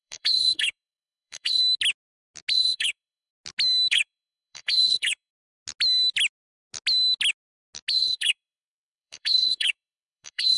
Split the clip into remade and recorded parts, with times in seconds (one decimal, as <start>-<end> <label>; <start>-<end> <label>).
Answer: 0.0-1.6 remade; 1.6-2.5 recorded; 2.5-3.3 remade; 3.3-3.9 recorded; 3.9-5.3 remade; 5.3-7.9 recorded; 7.9-10.6 remade